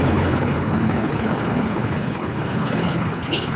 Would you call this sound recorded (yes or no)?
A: no